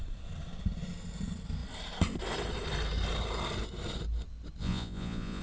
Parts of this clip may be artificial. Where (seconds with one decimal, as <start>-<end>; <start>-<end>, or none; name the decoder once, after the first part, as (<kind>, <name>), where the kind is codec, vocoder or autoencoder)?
4.6-5.4 (vocoder, Vocos)